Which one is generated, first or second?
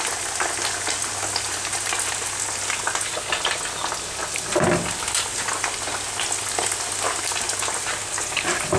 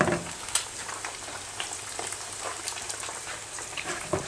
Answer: second